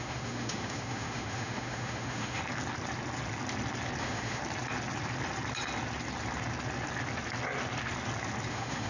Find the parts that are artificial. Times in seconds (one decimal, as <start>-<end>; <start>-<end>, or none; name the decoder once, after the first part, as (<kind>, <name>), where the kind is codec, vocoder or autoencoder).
0.0-2.4 (autoencoder, DAC-VAE); 4.0-4.4; 8.5-8.9